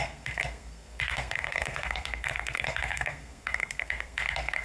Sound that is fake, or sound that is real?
fake